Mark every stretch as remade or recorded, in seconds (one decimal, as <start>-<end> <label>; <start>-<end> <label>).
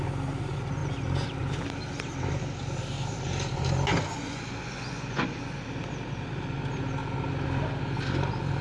0.0-4.1 recorded; 4.1-5.3 remade; 5.3-8.6 recorded